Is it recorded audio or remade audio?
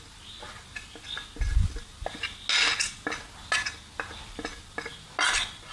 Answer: recorded